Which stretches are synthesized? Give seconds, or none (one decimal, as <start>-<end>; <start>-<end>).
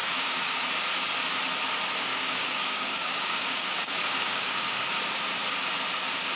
0.0-0.7; 2.1-4.8